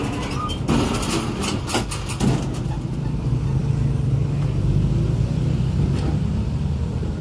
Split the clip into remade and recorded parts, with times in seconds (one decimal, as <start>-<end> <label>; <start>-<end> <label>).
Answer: 0.0-7.2 recorded